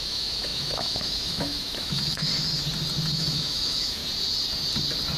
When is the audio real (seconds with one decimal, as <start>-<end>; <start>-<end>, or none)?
2.3-3.1; 4.0-5.2